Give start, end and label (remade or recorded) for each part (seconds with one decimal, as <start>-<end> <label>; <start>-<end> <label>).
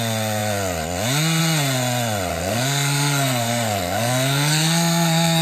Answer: 0.0-2.3 recorded; 2.3-5.4 remade